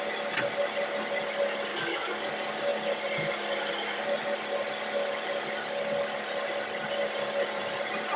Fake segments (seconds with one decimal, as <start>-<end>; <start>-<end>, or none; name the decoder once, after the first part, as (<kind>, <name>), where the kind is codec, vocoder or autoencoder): 1.7-2.3 (codec, DAC)